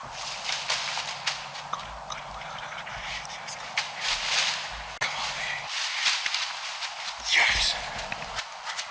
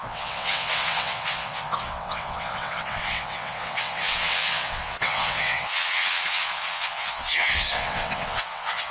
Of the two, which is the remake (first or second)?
second